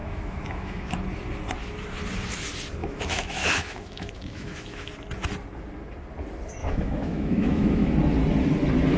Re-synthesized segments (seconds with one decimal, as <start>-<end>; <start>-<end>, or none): 0.0-1.0; 2.8-4.9; 6.6-7.9